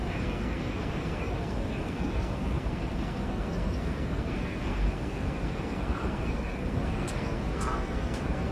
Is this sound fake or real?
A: fake